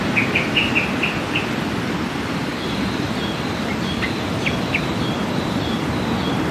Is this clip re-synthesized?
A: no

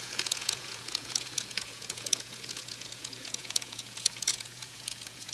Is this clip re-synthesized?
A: yes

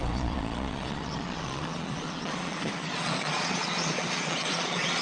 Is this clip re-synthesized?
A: yes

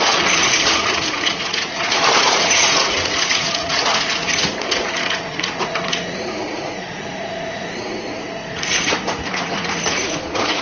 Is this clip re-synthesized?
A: yes